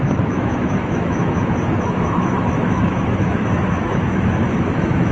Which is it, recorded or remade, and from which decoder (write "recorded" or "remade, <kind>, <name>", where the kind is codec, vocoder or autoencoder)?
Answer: remade, autoencoder, DAC-VAE